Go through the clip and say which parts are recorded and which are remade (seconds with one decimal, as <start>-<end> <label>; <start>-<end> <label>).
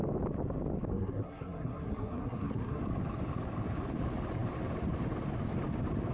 0.0-0.9 recorded; 0.9-2.8 remade; 2.8-6.1 recorded